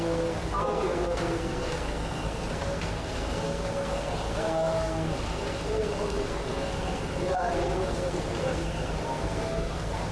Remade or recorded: remade